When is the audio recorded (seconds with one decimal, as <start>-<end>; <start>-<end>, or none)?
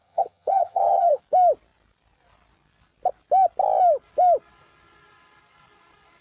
1.2-6.2